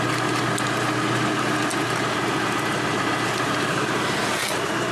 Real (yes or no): yes